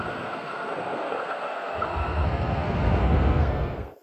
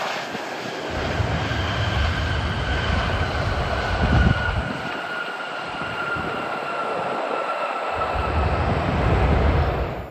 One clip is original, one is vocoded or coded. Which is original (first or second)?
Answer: second